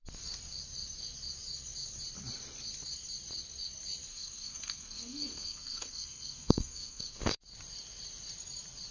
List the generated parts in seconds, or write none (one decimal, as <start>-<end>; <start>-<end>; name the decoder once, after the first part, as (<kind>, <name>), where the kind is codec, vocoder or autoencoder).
4.1-7.4 (codec, SNAC)